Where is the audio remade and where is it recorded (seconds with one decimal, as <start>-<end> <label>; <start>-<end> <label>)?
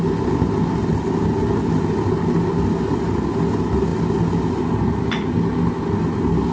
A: 0.0-6.5 recorded